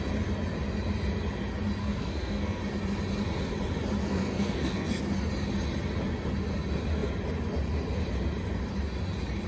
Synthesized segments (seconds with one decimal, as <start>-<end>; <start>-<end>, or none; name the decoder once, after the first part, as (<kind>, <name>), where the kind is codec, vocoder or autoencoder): 1.8-2.6 (codec, SNAC); 4.0-5.0